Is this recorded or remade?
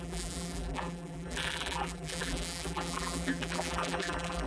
remade